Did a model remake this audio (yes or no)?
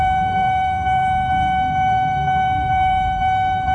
yes